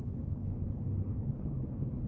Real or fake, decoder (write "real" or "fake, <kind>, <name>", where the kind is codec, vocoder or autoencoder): fake, codec, HILCodec